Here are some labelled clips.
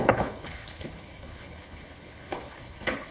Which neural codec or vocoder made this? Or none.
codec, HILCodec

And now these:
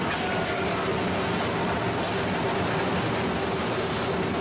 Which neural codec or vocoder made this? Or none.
none